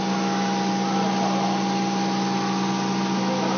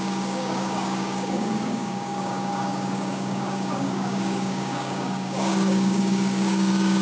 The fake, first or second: second